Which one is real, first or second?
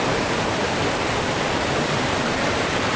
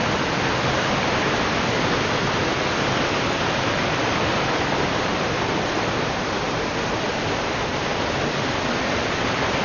second